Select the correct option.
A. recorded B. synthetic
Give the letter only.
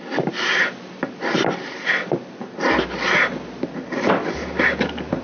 A